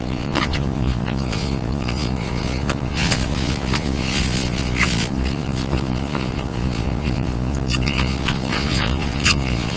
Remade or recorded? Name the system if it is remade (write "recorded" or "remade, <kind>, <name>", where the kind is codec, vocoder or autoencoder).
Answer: remade, vocoder, Vocos